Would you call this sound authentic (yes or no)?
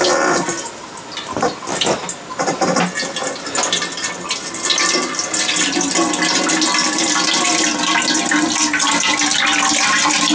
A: yes